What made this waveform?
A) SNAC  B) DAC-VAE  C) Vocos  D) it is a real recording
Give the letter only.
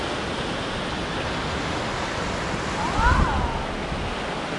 D